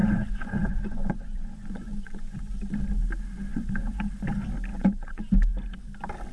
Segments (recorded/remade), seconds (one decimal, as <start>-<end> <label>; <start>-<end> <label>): 0.0-2.5 remade; 2.5-3.5 recorded; 3.5-4.1 remade; 4.1-4.7 recorded; 4.7-5.3 remade; 5.3-6.3 recorded